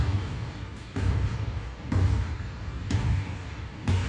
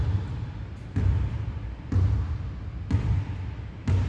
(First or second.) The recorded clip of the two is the second